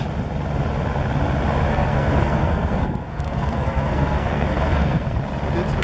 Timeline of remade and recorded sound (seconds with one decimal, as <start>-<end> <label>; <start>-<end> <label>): 0.0-1.7 recorded; 1.7-5.2 remade; 5.2-5.8 recorded